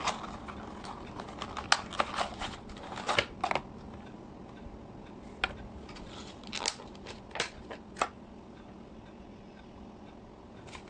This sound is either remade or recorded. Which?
recorded